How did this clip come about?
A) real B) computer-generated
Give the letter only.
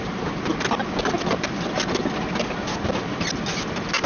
A